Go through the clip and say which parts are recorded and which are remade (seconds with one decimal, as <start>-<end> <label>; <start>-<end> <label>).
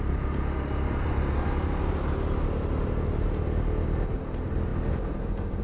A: 0.0-5.6 recorded